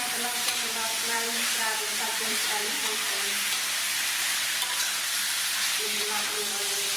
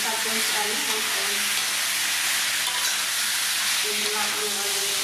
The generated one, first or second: first